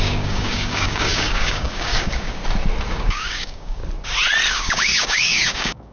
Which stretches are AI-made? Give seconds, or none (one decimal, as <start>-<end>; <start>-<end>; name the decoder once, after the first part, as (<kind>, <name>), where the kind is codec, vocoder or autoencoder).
0.0-2.4 (codec, DAC); 2.9-3.8; 4.5-5.9